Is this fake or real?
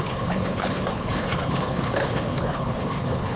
fake